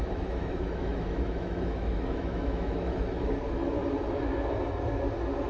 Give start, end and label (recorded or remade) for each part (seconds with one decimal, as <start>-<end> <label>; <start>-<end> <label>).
0.0-3.3 remade; 3.3-5.5 recorded